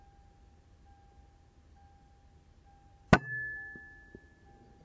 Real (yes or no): yes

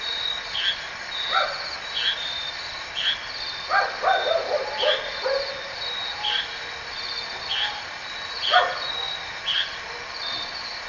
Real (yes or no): yes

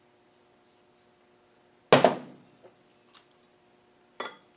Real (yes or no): yes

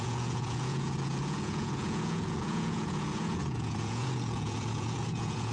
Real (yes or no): no